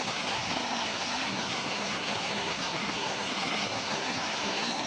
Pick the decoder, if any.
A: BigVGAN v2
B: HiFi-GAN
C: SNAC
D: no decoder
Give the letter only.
C